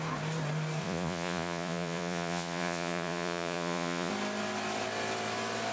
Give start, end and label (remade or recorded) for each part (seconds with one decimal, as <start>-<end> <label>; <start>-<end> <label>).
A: 0.0-0.8 recorded; 0.8-4.1 remade; 4.1-5.7 recorded